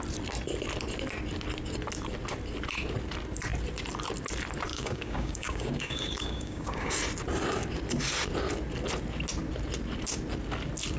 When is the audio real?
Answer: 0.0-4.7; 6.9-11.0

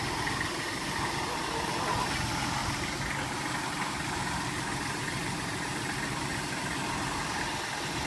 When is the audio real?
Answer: 0.0-8.1